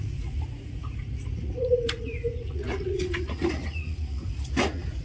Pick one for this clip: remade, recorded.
remade